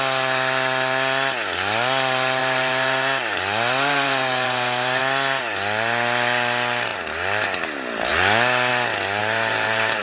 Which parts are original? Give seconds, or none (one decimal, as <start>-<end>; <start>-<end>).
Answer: 0.0-2.4; 5.0-9.2